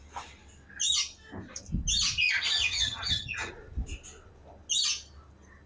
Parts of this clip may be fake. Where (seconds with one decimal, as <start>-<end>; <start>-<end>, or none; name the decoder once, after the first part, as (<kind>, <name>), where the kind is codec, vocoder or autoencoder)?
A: 2.6-3.5 (vocoder, HiFi-GAN)